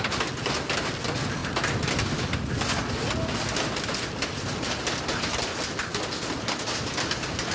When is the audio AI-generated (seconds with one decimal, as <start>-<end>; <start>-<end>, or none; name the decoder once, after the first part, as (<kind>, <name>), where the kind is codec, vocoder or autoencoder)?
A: none